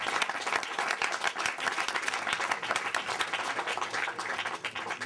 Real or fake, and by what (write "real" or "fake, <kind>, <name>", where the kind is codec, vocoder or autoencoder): real